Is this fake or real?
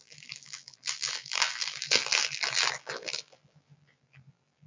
fake